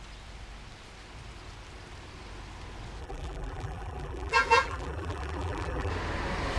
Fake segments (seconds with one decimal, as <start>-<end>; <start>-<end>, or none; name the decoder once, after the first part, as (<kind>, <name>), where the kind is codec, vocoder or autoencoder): 3.0-5.9 (vocoder, BigVGAN v2)